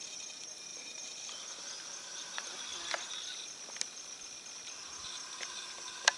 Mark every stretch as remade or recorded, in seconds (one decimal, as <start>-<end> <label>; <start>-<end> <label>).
0.0-0.7 recorded; 0.7-1.6 remade; 1.6-6.2 recorded